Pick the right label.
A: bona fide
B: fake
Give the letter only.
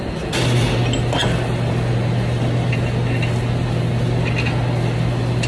A